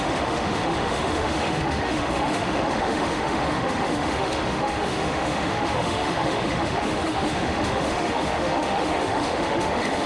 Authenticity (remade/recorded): remade